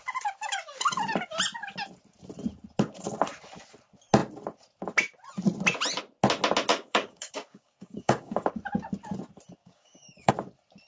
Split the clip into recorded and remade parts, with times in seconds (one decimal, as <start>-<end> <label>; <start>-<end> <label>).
0.0-6.7 recorded; 6.7-8.5 remade; 8.5-9.6 recorded; 9.6-10.3 remade; 10.3-10.9 recorded